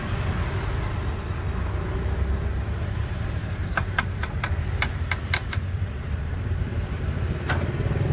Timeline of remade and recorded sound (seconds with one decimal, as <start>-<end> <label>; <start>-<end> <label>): 0.0-3.4 recorded; 3.4-4.3 remade; 4.3-5.4 recorded; 5.4-7.5 remade; 7.5-8.1 recorded

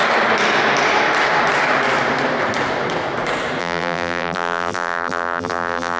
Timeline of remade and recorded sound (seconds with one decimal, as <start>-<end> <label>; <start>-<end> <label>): 0.0-3.6 recorded; 3.6-6.0 remade